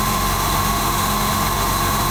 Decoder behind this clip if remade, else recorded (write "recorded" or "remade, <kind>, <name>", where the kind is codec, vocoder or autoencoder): remade, autoencoder, DAC-VAE